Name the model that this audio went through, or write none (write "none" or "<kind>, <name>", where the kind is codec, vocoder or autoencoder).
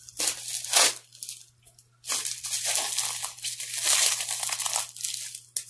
none